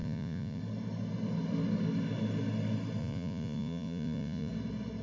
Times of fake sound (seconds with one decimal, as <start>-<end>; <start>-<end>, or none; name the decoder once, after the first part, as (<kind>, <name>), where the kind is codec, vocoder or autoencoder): 0.0-0.6 (vocoder, Vocos); 3.0-4.5